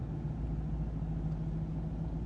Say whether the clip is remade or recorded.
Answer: recorded